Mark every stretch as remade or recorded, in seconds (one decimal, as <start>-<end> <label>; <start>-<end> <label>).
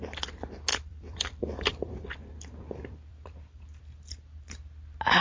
0.0-0.7 recorded; 0.7-3.8 remade; 3.8-5.2 recorded